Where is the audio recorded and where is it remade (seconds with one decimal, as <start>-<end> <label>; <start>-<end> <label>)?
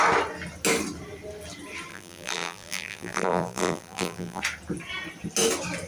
0.0-1.9 recorded; 1.9-4.4 remade; 4.4-5.9 recorded